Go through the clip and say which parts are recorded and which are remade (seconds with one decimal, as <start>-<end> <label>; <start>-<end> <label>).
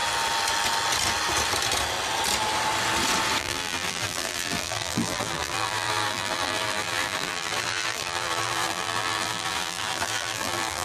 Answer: 0.0-3.4 recorded; 3.4-10.8 remade